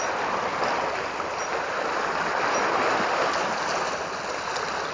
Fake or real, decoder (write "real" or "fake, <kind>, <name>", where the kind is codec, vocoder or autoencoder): real